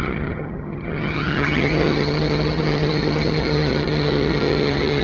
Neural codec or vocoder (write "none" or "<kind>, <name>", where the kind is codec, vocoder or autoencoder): vocoder, HiFi-GAN